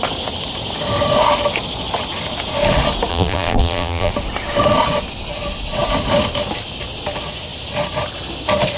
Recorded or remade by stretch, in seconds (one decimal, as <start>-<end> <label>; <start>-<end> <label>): 0.0-3.1 recorded; 3.1-4.1 remade; 4.1-8.8 recorded

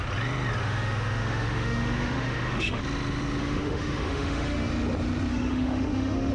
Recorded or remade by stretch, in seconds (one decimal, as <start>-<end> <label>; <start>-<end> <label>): 0.0-0.6 recorded; 0.6-2.8 remade; 2.8-3.4 recorded; 3.4-4.7 remade; 4.7-5.3 recorded; 5.3-6.3 remade

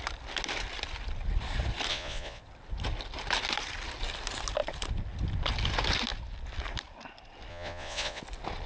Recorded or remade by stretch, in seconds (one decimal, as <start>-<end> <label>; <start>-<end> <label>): 0.0-1.9 recorded; 1.9-2.4 remade; 2.4-7.5 recorded; 7.5-8.2 remade; 8.2-8.7 recorded